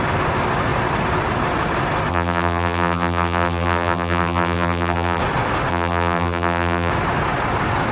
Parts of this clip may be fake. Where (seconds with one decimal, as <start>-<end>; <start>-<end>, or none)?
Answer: 2.1-5.2; 5.7-6.9